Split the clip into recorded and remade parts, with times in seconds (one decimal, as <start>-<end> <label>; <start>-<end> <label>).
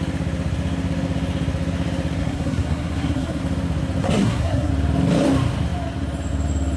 0.0-2.2 recorded; 2.2-3.4 remade; 3.4-4.0 recorded; 4.0-4.7 remade; 4.7-6.8 recorded